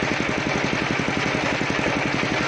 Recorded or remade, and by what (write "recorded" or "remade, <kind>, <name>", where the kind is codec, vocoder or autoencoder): recorded